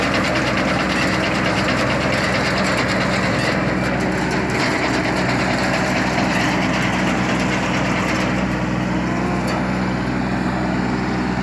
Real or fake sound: real